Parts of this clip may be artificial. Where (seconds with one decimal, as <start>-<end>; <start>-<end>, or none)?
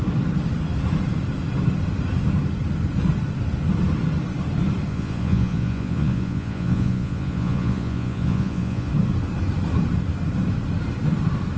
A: 4.9-8.9